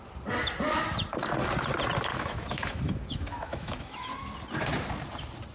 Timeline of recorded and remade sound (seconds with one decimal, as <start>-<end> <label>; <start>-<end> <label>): 0.0-2.1 recorded; 2.1-4.1 remade; 4.1-5.5 recorded